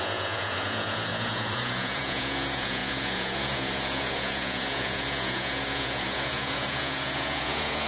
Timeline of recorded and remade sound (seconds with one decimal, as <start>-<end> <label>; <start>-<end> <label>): 0.0-7.9 remade

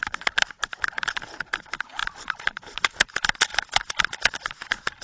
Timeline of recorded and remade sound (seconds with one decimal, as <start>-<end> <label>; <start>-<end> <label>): 0.0-5.0 recorded

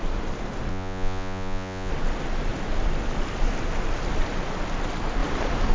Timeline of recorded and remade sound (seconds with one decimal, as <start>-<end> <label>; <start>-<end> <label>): 0.0-0.7 recorded; 0.7-1.9 remade; 1.9-5.7 recorded

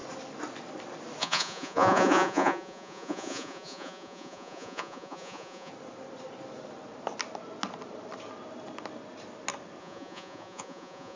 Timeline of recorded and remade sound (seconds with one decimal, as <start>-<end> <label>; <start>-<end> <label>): 0.0-1.2 recorded; 1.2-5.7 remade; 5.7-9.8 recorded; 9.8-11.2 remade